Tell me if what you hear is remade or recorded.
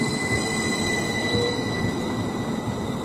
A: recorded